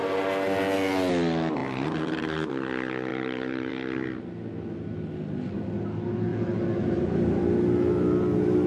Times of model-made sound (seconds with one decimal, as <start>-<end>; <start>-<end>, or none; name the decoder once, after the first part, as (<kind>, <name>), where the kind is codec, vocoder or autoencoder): 1.6-2.5 (vocoder, BigVGAN v2); 3.1-3.7